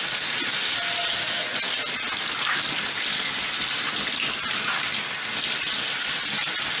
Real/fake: real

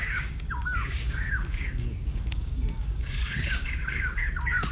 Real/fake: fake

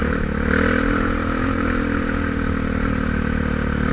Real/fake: real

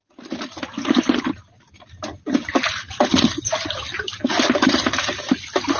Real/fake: real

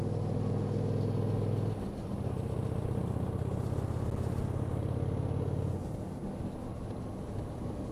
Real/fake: real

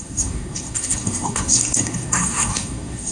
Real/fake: fake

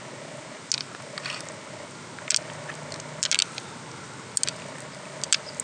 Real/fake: real